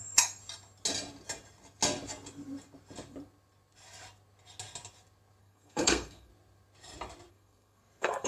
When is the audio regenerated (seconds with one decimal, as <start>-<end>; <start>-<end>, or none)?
0.0-0.4; 5.4-6.3; 7.3-8.3